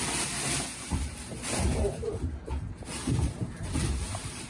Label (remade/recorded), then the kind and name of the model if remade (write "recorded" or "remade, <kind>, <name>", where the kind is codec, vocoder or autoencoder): remade, vocoder, BigVGAN v2